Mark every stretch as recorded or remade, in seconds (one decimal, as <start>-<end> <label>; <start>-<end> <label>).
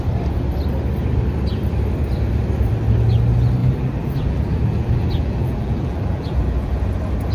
0.0-3.6 recorded; 3.6-6.7 remade; 6.7-7.3 recorded